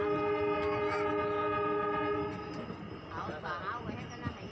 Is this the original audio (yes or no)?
yes